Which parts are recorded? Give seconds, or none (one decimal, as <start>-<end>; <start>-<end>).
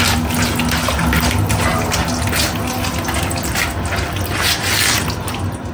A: 0.0-5.7